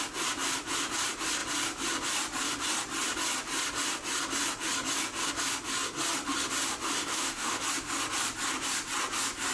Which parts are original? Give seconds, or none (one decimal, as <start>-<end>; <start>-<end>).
0.0-7.0; 7.6-9.5